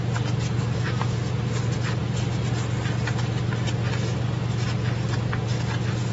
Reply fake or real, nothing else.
real